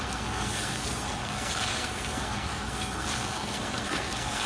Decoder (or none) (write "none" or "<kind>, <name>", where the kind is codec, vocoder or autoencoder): codec, SNAC